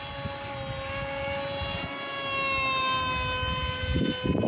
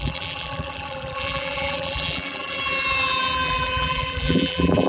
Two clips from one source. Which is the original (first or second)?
first